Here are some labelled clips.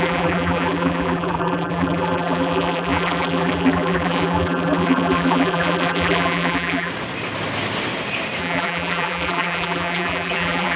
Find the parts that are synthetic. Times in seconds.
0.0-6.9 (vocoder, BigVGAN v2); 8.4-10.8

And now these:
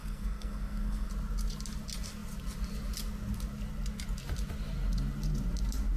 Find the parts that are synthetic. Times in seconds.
0.0-1.1 (codec, SNAC)

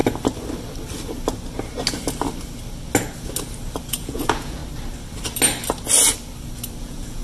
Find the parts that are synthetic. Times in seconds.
3.9-4.6 (vocoder, Vocos); 6.8-7.2

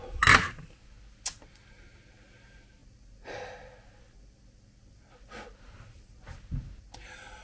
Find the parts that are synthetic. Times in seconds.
none

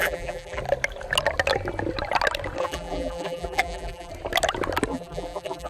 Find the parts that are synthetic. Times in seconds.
0.0-0.6 (vocoder, BigVGAN v2); 2.6-4.1; 4.9-5.7

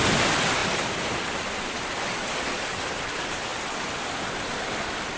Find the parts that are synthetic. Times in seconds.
none

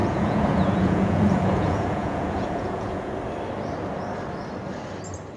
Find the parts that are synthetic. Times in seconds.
0.0-3.2 (vocoder, Vocos)

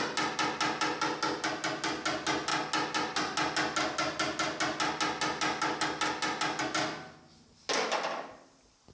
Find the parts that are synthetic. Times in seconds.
none